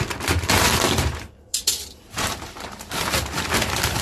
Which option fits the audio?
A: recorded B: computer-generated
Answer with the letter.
B